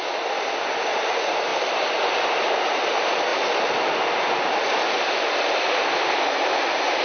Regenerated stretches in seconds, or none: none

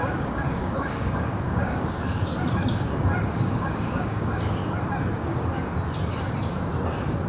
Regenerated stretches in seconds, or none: 0.0-2.3 (codec, DAC); 3.3-4.6; 5.1-5.5